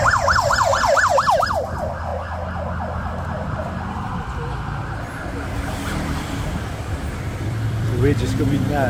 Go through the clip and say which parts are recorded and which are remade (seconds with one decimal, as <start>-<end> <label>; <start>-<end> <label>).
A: 0.0-2.1 remade; 2.1-7.4 recorded; 7.4-8.9 remade